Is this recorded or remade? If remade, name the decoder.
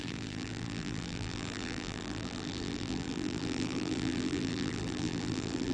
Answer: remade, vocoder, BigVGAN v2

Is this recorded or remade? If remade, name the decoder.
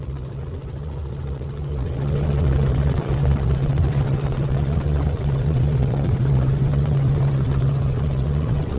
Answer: remade, vocoder, WaveNeXt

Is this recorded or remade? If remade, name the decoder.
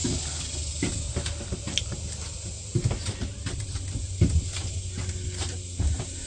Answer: recorded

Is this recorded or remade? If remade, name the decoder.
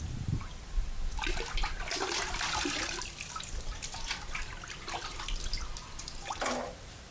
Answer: recorded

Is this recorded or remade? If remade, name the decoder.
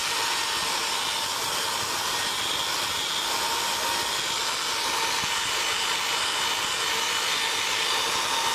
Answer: recorded